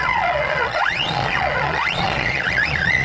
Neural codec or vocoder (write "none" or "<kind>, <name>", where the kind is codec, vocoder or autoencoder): vocoder, Vocos